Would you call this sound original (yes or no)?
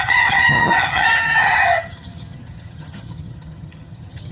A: no